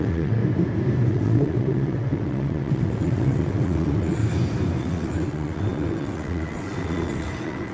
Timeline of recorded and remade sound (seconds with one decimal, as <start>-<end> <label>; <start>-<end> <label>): 0.0-0.4 remade; 0.4-1.1 recorded; 1.1-4.2 remade; 4.2-4.8 recorded; 4.8-7.7 remade